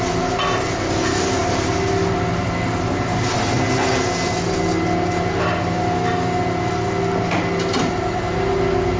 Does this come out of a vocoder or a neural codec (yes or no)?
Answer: no